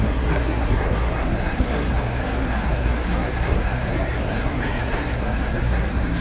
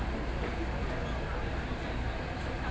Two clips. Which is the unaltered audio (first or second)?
second